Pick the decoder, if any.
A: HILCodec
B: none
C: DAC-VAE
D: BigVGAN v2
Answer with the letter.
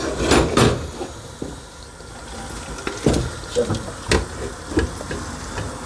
B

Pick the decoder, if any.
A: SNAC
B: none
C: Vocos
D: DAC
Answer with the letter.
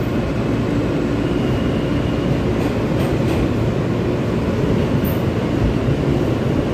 B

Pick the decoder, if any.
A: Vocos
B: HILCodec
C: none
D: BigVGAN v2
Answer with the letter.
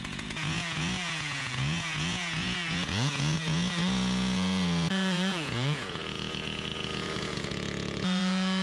A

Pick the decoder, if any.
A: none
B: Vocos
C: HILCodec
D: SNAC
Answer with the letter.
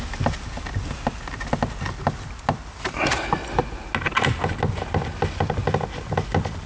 A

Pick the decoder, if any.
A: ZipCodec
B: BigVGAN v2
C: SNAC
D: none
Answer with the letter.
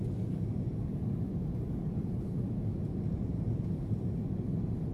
D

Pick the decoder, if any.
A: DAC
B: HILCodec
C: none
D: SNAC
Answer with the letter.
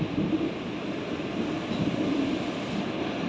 C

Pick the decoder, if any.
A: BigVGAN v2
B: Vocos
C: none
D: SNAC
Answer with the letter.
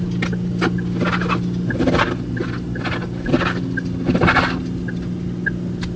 C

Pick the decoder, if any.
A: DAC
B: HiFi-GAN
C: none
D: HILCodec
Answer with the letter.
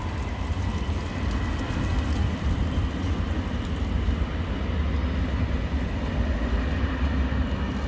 C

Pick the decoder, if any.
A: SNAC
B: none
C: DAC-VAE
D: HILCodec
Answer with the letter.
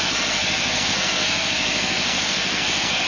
A